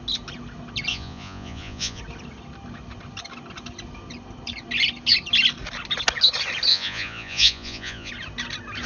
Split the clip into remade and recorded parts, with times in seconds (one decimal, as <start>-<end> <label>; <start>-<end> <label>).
0.0-0.9 recorded; 0.9-2.0 remade; 2.0-6.7 recorded; 6.7-8.1 remade; 8.1-8.9 recorded